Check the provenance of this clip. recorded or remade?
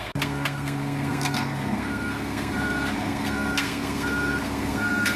remade